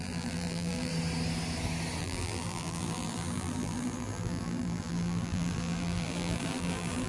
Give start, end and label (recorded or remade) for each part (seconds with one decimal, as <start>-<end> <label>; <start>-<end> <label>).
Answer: 0.0-0.9 remade; 0.9-2.0 recorded; 2.0-7.1 remade